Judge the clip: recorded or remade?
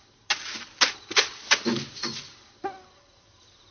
recorded